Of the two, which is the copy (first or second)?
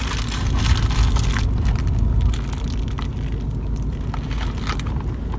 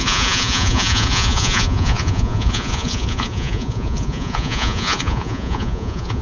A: second